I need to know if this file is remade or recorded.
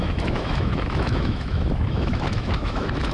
remade